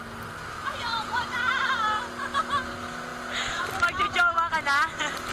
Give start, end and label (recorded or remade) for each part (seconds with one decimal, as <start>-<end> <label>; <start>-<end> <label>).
0.0-0.6 recorded; 0.6-1.3 remade; 1.3-5.3 recorded